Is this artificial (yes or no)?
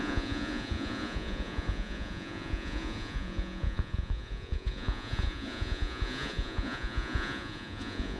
yes